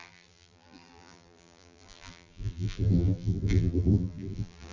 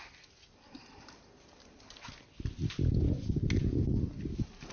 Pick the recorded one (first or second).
second